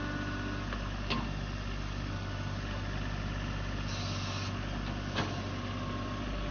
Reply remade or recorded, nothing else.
recorded